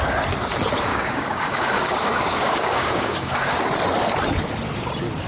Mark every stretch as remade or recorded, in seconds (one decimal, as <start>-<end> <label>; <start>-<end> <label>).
0.0-0.9 recorded; 0.9-3.7 remade; 3.7-5.3 recorded